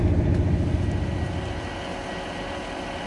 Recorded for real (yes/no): yes